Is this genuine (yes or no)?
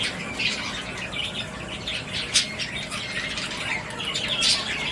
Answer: yes